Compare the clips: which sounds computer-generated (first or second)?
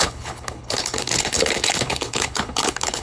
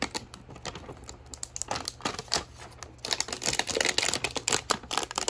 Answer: first